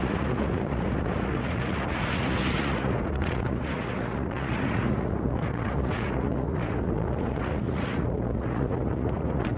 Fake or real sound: fake